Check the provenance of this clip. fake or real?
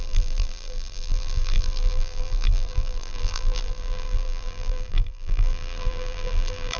fake